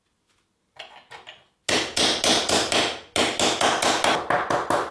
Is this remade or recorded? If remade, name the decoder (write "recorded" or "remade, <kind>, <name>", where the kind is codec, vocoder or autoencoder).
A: recorded